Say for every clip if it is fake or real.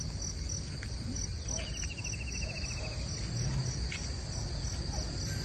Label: real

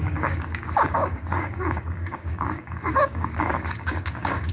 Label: fake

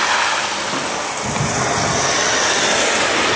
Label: real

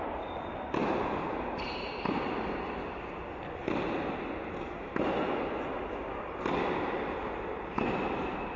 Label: real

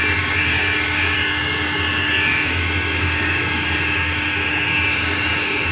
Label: fake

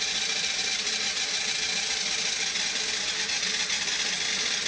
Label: real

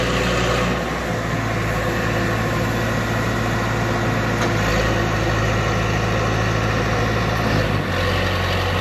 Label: real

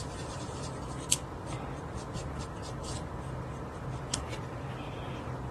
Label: real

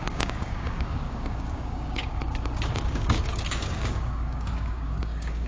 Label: fake